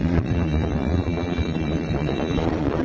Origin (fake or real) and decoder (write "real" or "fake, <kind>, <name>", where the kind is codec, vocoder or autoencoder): fake, vocoder, Vocos